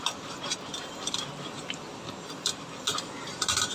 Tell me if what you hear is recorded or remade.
recorded